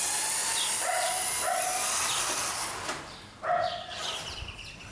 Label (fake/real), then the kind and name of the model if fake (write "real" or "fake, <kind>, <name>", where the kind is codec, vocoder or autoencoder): real